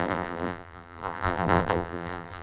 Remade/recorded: remade